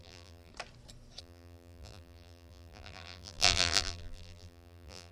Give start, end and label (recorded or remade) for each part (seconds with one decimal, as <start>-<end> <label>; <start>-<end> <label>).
0.0-0.5 remade; 0.5-1.2 recorded; 1.2-5.1 remade